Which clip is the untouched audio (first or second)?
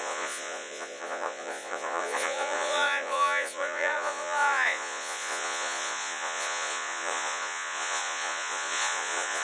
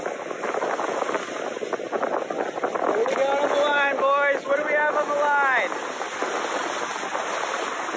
second